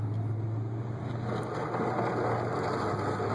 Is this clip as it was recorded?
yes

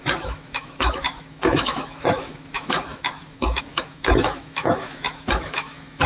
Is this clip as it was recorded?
no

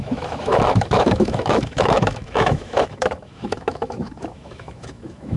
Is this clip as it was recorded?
no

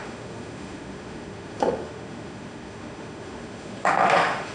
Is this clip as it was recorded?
no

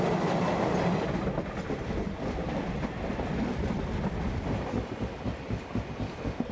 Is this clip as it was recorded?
yes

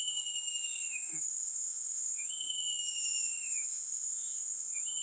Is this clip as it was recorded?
no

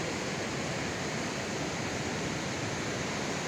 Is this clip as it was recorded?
yes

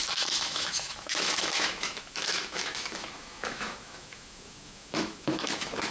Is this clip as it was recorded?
no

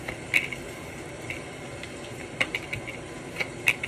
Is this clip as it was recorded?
yes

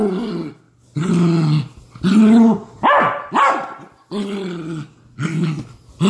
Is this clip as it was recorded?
yes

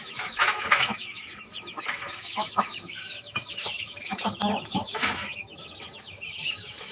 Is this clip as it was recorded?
no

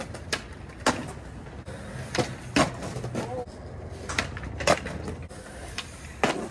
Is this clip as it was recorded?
yes